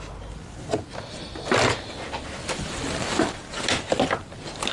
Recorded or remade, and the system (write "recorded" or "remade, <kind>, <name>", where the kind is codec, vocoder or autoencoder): recorded